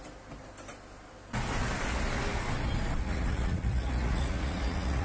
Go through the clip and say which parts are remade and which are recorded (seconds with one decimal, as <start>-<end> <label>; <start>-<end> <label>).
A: 0.0-3.0 recorded; 3.0-5.0 remade